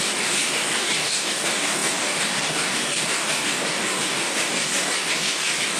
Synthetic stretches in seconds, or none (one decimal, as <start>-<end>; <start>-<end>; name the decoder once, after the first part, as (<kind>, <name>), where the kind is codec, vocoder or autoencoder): 0.0-5.8 (codec, DAC)